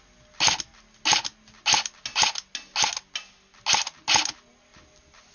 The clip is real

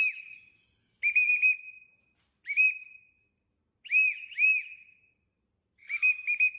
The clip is real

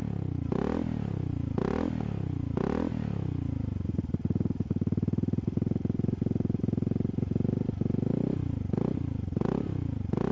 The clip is real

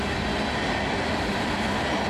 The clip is real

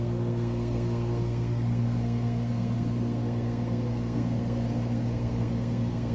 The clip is fake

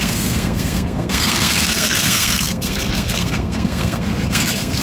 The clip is fake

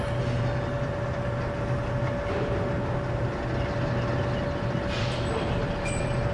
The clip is real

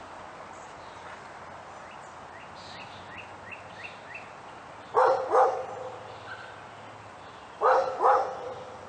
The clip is real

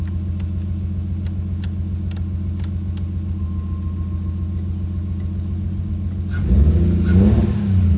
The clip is real